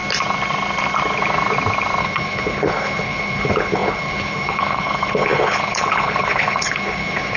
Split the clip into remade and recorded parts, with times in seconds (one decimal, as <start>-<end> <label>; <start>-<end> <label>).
0.0-2.0 recorded; 2.0-7.4 remade